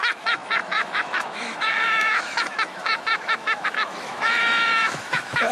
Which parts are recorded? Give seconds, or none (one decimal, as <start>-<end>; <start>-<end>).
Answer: none